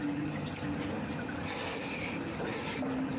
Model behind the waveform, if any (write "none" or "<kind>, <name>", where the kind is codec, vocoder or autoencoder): none